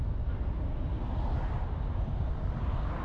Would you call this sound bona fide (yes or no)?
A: yes